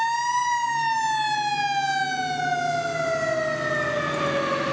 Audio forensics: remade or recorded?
recorded